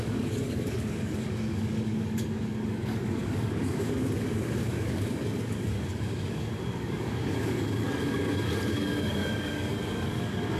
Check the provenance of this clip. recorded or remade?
remade